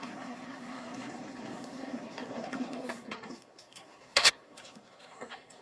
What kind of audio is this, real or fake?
fake